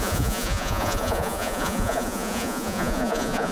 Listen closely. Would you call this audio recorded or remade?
remade